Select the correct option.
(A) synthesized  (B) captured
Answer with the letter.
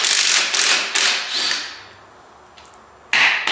B